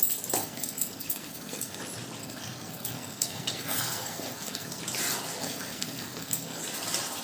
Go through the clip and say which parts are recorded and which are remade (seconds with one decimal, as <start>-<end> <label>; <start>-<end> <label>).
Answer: 0.0-0.4 recorded; 0.4-1.8 remade; 1.8-2.2 recorded; 2.2-4.8 remade; 4.8-5.4 recorded; 5.4-6.6 remade; 6.6-7.2 recorded